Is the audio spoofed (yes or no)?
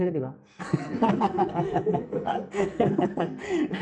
yes